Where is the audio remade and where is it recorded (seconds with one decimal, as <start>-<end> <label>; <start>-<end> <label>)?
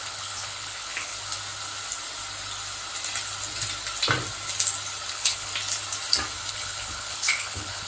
0.0-1.1 remade; 1.1-5.1 recorded; 5.1-5.5 remade; 5.5-6.5 recorded; 6.5-7.9 remade